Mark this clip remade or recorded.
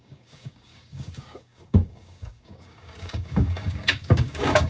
remade